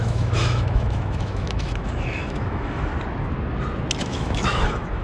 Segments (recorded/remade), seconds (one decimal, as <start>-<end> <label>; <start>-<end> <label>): 0.0-2.9 remade; 2.9-4.0 recorded; 4.0-5.0 remade